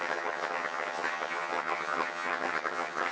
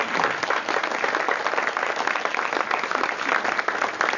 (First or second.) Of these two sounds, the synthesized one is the first